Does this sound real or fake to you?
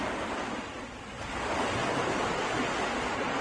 real